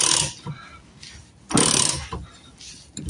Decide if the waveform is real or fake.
real